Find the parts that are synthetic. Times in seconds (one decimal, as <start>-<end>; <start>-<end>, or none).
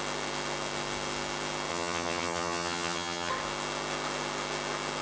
1.7-3.3